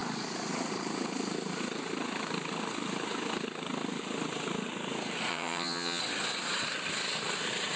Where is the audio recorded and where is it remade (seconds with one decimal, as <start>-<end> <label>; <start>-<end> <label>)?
0.0-5.3 recorded; 5.3-6.0 remade; 6.0-7.8 recorded